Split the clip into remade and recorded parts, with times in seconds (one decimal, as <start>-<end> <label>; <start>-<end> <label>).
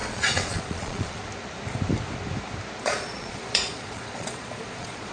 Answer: 0.0-1.2 remade; 1.2-2.8 recorded; 2.8-5.1 remade